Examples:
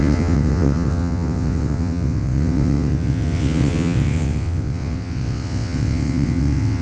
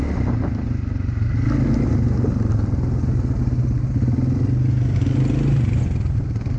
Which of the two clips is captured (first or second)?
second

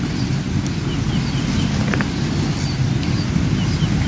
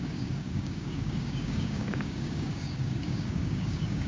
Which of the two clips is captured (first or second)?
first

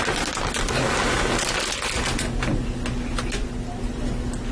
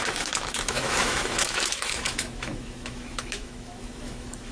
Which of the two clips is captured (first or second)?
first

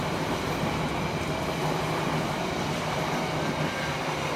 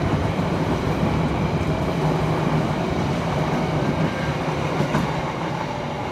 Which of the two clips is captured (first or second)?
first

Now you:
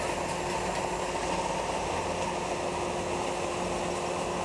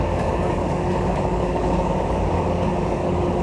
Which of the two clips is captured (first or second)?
first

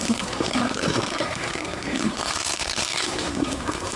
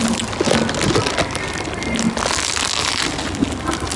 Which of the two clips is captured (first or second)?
second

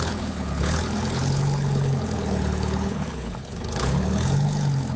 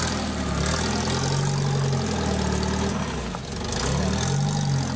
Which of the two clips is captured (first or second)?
second